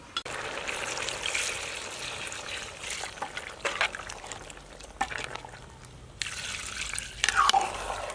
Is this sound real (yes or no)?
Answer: yes